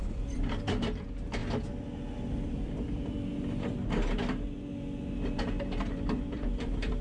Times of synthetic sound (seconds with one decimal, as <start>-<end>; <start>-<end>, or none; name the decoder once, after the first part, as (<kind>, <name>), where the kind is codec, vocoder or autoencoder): 0.0-1.4 (vocoder, BigVGAN v2); 2.3-3.3; 5.9-7.0